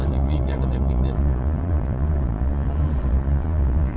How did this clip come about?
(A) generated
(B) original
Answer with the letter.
A